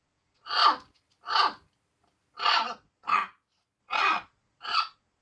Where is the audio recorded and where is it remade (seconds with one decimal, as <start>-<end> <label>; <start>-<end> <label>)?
0.0-0.6 remade; 0.6-2.4 recorded; 2.4-3.2 remade; 3.2-3.8 recorded; 3.8-5.2 remade